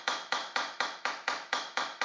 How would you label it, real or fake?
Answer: fake